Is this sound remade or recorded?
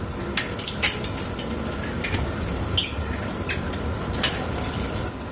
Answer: recorded